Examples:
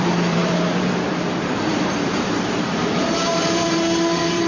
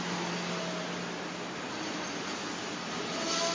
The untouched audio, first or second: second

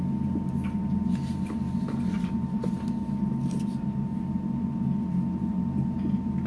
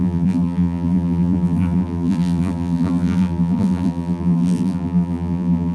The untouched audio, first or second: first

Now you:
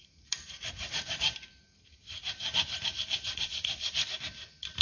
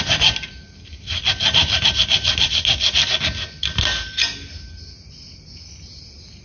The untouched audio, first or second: second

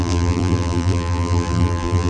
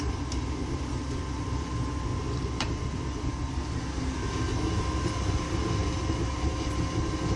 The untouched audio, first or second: second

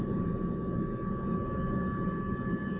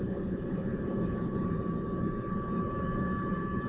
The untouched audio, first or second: first